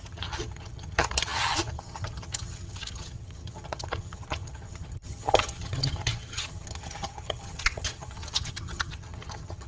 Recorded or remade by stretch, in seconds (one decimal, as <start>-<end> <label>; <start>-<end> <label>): 0.0-9.7 remade